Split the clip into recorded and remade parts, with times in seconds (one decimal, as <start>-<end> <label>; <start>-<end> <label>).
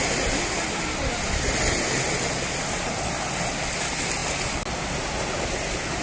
0.0-6.0 recorded